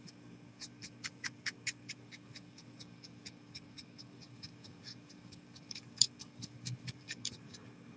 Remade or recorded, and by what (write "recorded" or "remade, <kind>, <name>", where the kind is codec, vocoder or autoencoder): remade, codec, DAC